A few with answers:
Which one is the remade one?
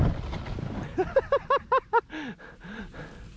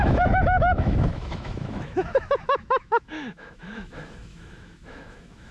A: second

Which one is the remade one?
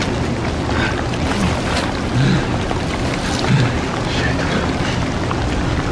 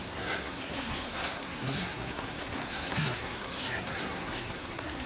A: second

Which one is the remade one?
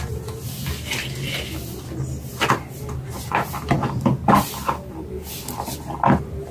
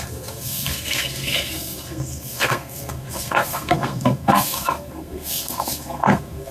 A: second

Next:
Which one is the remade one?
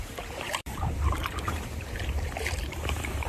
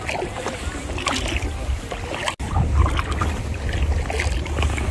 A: first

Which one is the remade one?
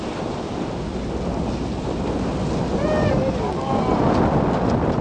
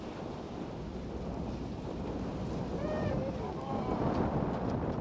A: second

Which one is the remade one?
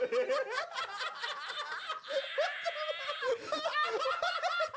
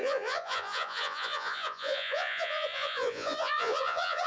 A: second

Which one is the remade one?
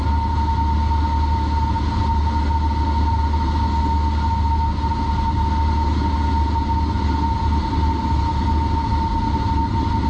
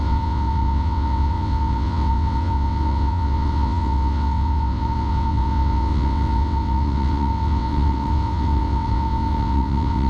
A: second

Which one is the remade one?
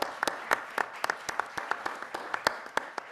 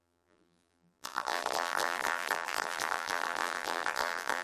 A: second